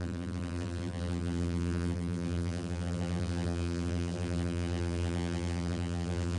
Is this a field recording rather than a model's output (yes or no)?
no